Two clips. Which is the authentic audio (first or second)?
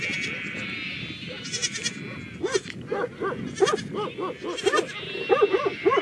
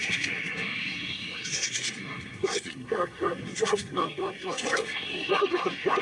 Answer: first